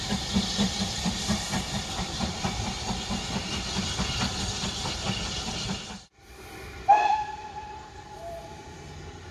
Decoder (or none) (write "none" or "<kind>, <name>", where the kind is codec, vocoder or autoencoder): vocoder, BigVGAN v2